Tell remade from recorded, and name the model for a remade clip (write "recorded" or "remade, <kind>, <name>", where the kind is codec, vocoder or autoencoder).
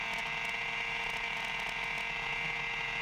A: recorded